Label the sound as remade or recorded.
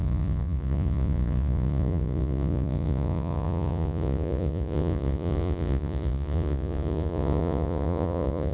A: remade